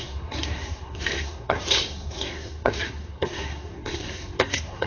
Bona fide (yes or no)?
no